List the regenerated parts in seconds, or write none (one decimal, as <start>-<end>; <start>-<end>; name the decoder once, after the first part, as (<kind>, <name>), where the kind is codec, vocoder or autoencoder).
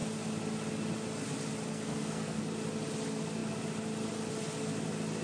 1.7-2.4 (codec, SNAC)